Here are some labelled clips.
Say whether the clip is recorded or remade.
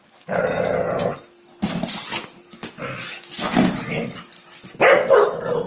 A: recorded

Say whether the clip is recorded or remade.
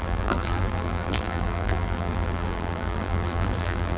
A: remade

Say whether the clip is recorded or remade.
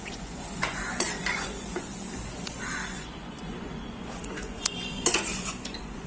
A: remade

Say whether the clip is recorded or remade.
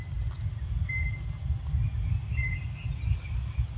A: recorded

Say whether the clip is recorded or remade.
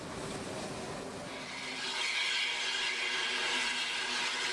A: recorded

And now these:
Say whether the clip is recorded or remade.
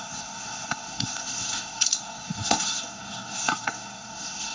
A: remade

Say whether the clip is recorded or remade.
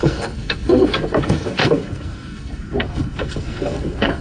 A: remade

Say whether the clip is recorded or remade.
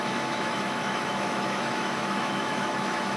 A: remade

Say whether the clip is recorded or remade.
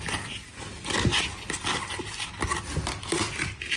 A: recorded